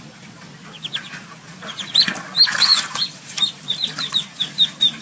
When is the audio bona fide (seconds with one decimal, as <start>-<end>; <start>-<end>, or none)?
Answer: 0.0-5.0